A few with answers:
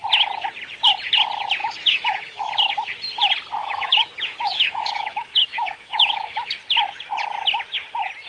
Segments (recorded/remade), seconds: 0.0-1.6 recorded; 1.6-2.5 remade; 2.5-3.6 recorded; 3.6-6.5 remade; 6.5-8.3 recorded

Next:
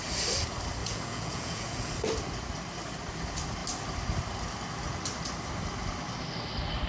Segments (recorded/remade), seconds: 0.0-0.8 recorded; 0.8-1.9 remade; 1.9-6.9 recorded

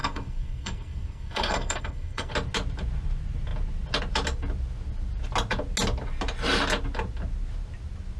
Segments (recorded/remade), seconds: 0.0-2.3 remade; 2.3-8.2 recorded

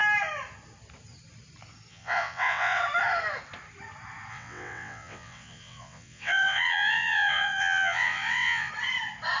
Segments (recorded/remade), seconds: 0.0-1.9 recorded; 1.9-2.8 remade; 2.8-4.3 recorded; 4.3-8.7 remade; 8.7-9.4 recorded

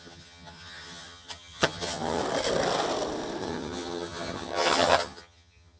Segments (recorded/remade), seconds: 0.0-2.2 remade; 2.2-3.4 recorded; 3.4-5.8 remade

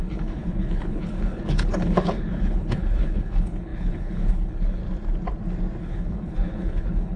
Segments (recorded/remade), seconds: 0.0-4.8 remade; 4.8-5.8 recorded; 5.8-7.2 remade

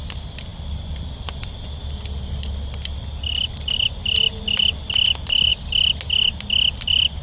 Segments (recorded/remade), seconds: 0.0-7.2 recorded

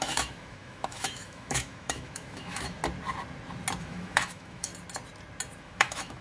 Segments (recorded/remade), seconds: 0.0-2.8 remade; 2.8-3.8 recorded; 3.8-4.7 remade; 4.7-5.6 recorded; 5.6-6.2 remade